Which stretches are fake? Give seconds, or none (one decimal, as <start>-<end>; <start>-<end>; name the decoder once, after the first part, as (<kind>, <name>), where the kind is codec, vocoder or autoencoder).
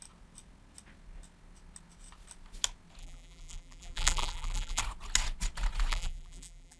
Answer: 3.0-4.8 (vocoder, BigVGAN v2); 5.9-6.8